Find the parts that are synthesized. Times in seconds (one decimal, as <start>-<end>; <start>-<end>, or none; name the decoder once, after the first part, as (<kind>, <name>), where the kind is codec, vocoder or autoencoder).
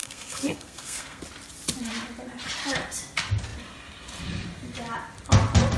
0.0-1.2 (codec, SNAC)